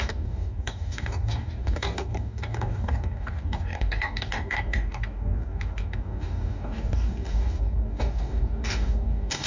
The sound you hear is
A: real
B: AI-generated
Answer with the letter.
B